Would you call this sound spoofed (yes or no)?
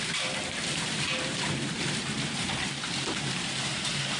yes